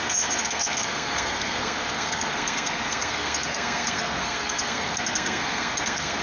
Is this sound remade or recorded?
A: remade